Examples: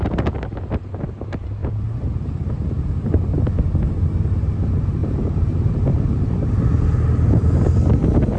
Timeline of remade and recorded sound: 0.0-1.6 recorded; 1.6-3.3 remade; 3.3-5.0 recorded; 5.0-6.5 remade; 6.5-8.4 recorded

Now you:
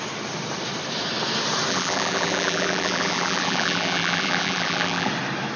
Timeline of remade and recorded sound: 0.0-1.7 recorded; 1.7-5.1 remade; 5.1-5.6 recorded

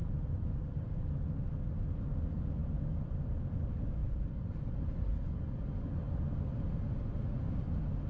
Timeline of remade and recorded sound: 0.0-1.5 remade; 1.5-4.0 recorded; 4.0-4.6 remade; 4.6-8.1 recorded

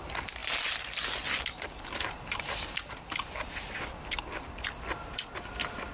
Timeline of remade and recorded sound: 0.0-5.9 recorded

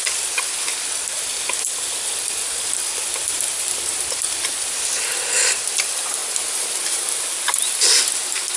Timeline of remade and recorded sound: 0.0-6.2 remade; 6.2-8.0 recorded; 8.0-8.6 remade

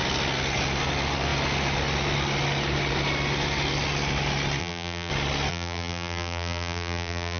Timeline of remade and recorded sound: 0.0-4.6 recorded; 4.6-5.1 remade; 5.1-5.5 recorded; 5.5-7.4 remade

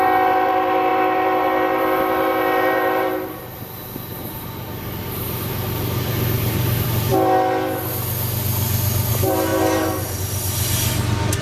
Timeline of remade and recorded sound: 0.0-7.1 remade; 7.1-9.1 recorded; 9.1-11.4 remade

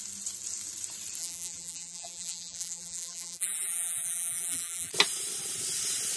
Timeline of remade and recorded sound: 0.0-1.2 recorded; 1.2-4.9 remade; 4.9-6.2 recorded